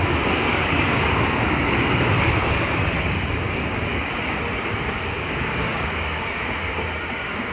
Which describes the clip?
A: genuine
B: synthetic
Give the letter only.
B